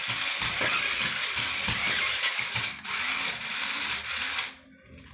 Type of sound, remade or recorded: recorded